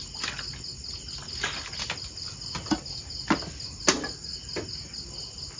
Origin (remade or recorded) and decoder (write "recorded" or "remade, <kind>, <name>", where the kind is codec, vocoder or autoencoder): recorded